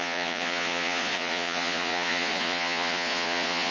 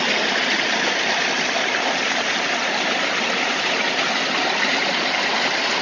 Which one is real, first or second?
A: second